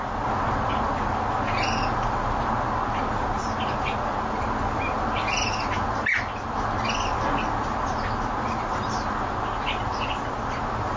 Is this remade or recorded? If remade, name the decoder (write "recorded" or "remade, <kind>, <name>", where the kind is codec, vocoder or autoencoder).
recorded